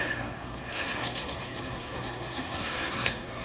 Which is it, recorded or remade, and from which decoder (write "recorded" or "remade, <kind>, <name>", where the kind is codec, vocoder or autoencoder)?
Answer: remade, codec, SNAC